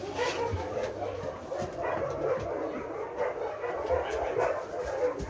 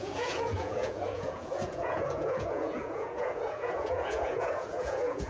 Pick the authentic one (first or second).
first